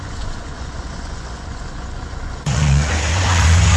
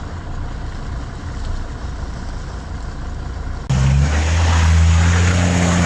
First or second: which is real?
second